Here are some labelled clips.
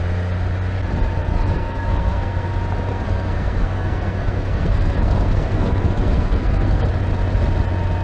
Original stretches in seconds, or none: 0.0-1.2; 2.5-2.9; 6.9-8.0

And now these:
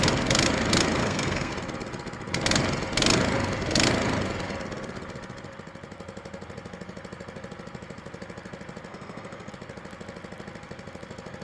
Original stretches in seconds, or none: 0.0-1.0; 1.5-8.9; 9.5-11.4

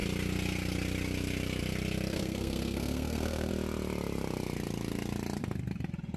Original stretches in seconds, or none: 0.0-2.1; 3.5-6.2

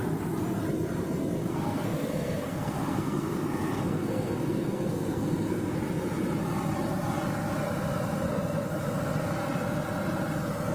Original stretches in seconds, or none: 0.0-1.4; 5.8-10.7

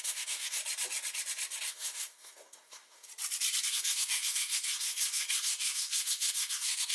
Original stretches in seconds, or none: 0.6-1.7; 3.1-3.7

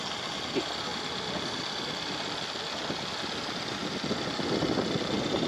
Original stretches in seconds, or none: 0.0-5.5

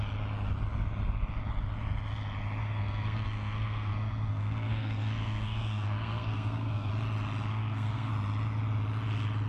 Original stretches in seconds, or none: 0.0-2.6; 6.9-7.5; 8.1-9.5